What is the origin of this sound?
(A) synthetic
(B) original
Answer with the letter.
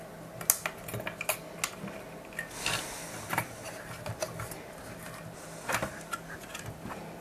B